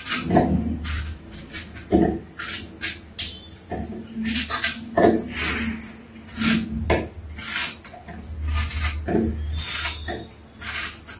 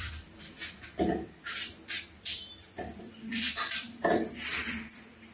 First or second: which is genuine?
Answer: first